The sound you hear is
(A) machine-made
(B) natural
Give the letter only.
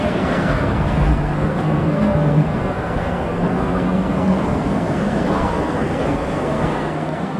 A